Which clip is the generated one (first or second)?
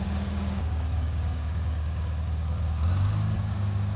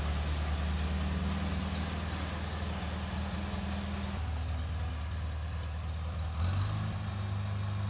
first